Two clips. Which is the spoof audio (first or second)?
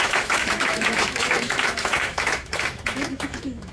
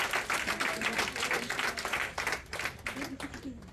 first